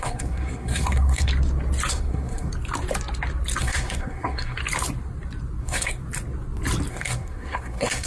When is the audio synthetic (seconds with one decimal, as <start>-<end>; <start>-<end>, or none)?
0.0-1.3; 1.9-2.5; 3.6-4.6; 5.6-6.0; 6.9-8.1